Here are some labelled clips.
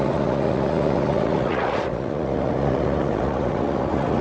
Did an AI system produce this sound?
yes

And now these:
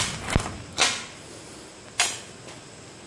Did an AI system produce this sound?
no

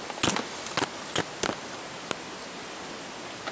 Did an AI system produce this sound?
no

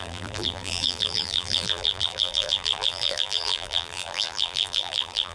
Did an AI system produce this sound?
yes